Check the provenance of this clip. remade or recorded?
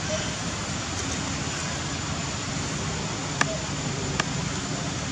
recorded